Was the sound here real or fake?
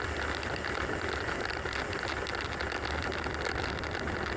real